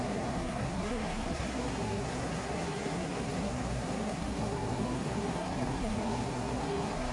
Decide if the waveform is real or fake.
fake